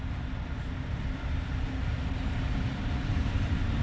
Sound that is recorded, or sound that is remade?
recorded